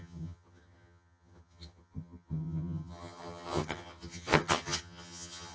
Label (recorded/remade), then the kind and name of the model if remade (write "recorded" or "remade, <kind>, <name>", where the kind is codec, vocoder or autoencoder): remade, vocoder, HiFi-GAN